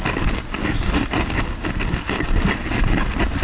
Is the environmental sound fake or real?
real